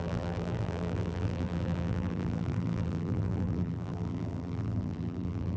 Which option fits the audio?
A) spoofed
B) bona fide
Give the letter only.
A